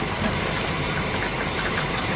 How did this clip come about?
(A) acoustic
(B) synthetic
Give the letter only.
A